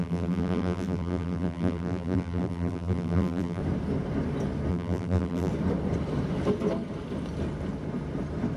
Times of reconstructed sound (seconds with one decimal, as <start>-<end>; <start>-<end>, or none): 0.0-3.6; 4.7-5.5